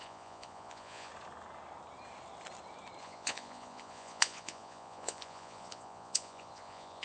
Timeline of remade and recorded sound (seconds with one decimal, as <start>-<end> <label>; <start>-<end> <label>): 0.0-1.1 remade; 1.1-3.0 recorded; 3.0-7.0 remade